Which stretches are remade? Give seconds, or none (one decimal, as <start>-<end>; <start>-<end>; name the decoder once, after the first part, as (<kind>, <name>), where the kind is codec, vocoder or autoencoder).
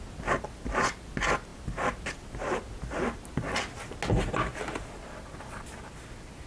none